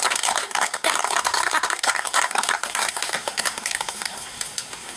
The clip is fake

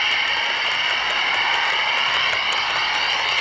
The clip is real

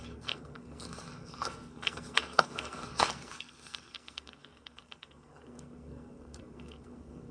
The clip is fake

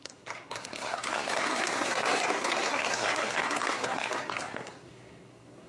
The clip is fake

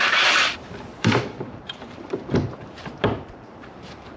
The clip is fake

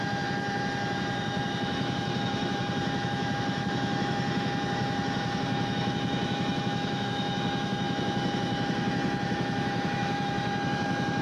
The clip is fake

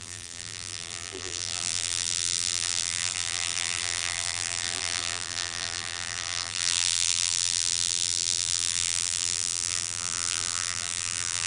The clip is fake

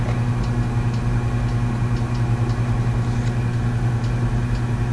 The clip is fake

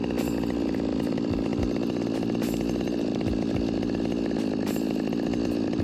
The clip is fake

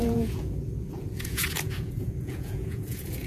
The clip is fake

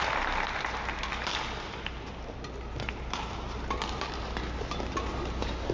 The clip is real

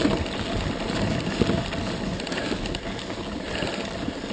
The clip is real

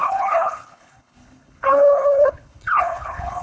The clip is fake